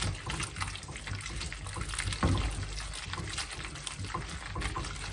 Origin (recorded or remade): recorded